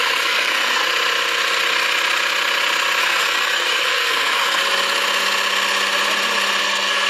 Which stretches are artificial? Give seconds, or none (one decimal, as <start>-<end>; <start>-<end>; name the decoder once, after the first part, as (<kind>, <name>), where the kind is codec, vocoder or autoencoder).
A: 0.0-0.8 (codec, SNAC); 3.0-4.6; 6.6-7.1

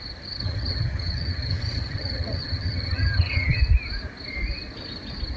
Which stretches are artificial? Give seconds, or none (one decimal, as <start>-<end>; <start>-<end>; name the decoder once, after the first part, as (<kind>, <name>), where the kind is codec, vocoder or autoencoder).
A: 0.4-3.6 (vocoder, HiFi-GAN)

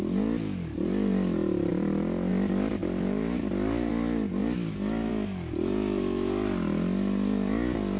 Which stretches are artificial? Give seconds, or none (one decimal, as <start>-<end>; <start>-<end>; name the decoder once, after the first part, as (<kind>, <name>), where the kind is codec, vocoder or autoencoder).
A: 1.7-2.3 (vocoder, BigVGAN v2); 2.8-3.9; 4.4-5.1

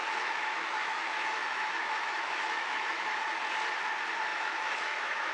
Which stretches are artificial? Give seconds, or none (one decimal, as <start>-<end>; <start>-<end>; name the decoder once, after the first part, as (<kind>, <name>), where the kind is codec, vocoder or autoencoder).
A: 0.0-3.2 (autoencoder, DAC-VAE); 4.3-5.3

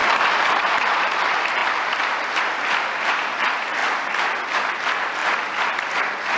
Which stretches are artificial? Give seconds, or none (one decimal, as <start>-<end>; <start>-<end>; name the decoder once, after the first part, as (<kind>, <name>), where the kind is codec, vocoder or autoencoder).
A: 0.0-1.2 (vocoder, BigVGAN v2)

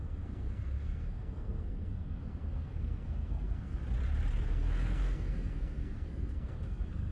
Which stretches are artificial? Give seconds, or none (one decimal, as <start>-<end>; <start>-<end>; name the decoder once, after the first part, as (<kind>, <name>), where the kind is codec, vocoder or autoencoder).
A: 0.0-3.8 (codec, SNAC); 4.4-7.1

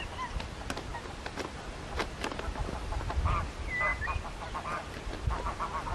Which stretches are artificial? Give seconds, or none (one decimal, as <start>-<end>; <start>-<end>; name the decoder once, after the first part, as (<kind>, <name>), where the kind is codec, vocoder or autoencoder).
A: none

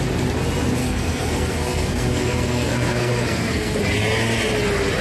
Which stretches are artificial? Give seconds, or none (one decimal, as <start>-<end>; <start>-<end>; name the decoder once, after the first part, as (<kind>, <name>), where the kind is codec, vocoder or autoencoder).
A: 0.8-3.8 (codec, SNAC)